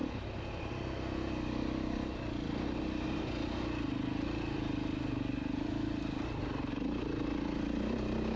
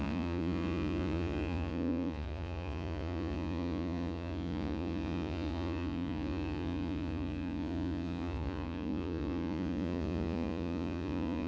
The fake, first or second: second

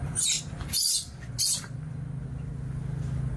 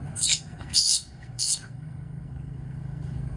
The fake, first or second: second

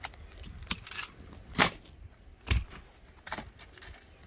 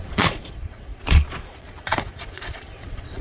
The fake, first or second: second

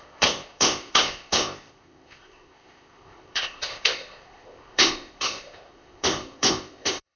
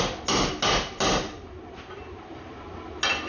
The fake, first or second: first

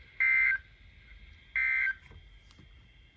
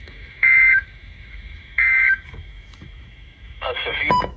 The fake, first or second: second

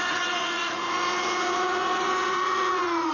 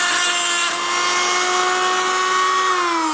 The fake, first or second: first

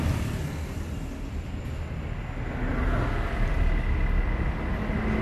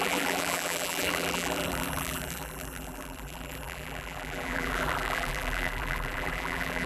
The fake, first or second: second